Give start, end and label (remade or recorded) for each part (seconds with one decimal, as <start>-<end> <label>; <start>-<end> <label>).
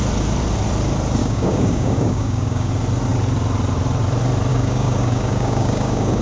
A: 0.0-1.2 recorded; 1.2-2.7 remade; 2.7-4.5 recorded; 4.5-6.2 remade